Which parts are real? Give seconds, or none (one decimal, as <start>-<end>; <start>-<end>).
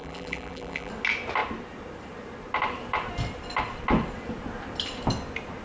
0.9-5.6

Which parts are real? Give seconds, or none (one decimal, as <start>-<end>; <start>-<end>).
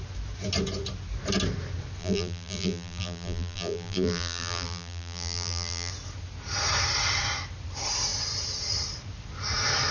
0.0-2.0; 5.9-9.9